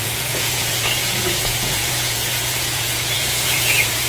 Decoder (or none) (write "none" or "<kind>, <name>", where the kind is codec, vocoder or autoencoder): vocoder, Vocos